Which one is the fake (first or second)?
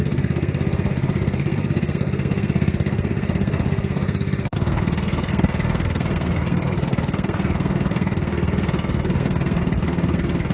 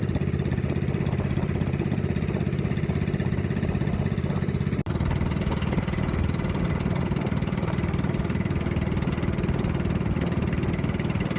first